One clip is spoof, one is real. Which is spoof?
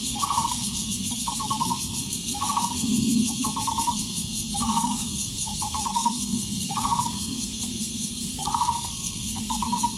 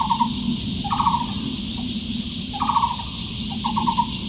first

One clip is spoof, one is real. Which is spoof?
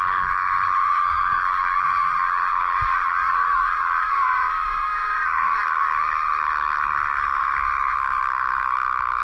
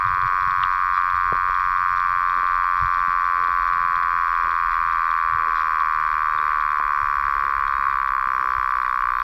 first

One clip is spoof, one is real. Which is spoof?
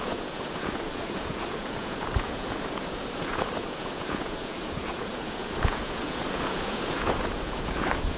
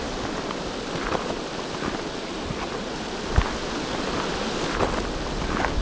first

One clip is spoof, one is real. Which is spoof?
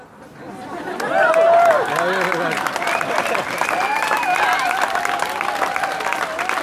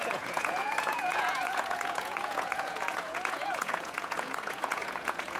second